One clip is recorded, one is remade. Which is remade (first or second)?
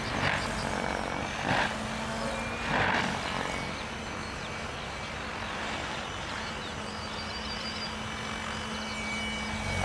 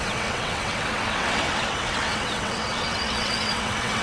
second